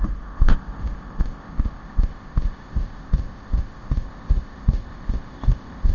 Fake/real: fake